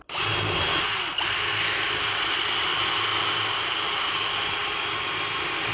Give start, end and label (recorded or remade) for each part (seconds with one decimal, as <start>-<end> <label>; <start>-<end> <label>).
0.0-5.7 recorded